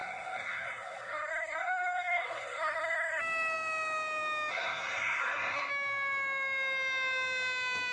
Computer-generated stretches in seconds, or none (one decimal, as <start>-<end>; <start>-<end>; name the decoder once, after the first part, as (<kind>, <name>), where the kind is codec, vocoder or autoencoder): 0.0-3.2 (codec, SNAC); 4.5-5.7